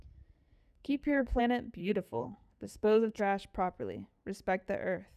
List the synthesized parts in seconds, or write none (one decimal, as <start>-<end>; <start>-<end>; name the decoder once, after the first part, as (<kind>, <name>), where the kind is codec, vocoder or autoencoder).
0.6-1.4 (codec, SNAC); 1.8-3.2